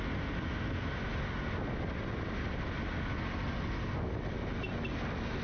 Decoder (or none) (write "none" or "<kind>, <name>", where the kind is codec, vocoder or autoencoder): none